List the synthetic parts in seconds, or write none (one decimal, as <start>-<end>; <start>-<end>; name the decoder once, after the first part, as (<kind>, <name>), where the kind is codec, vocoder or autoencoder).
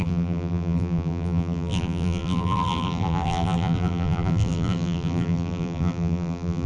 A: 0.0-6.7 (vocoder, BigVGAN v2)